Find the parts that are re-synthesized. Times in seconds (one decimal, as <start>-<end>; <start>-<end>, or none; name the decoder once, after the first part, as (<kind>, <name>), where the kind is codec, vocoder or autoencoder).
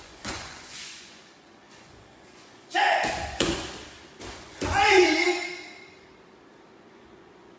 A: 0.0-3.6 (vocoder, Vocos); 4.3-5.4; 6.8-7.6